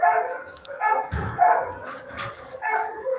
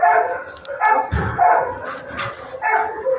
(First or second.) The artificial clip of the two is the first